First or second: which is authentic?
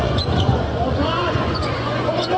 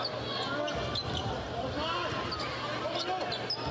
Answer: second